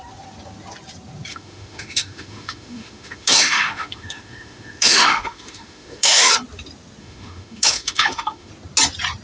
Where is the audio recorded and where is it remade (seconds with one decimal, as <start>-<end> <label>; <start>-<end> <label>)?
0.0-1.3 recorded; 1.3-6.3 remade; 6.3-7.0 recorded; 7.0-8.5 remade; 8.5-9.2 recorded